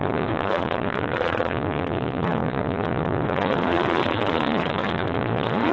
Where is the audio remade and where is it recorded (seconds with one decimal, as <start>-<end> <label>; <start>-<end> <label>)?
0.0-5.7 remade